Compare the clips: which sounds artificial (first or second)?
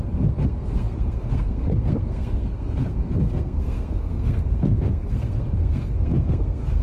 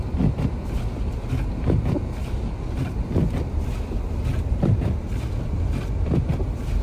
first